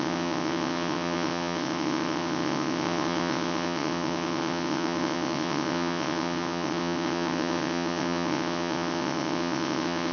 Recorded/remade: remade